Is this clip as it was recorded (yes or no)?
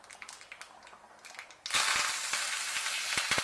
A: yes